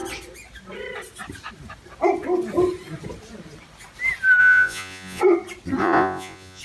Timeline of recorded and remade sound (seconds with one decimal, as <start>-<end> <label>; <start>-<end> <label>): 0.0-4.4 recorded; 4.4-5.2 remade; 5.2-5.8 recorded; 5.8-6.6 remade